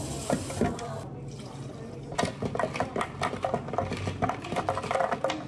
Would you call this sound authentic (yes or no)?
yes